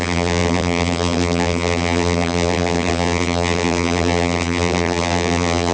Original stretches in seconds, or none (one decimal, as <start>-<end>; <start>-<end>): none